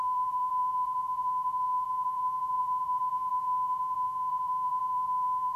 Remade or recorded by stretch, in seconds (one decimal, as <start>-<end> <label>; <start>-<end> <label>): 0.0-5.6 remade